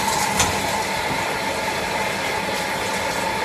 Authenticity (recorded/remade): recorded